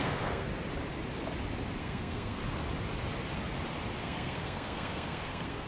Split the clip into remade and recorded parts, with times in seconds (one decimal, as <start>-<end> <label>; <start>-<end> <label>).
0.0-0.5 remade; 0.5-1.8 recorded; 1.8-2.4 remade; 2.4-4.0 recorded; 4.0-5.7 remade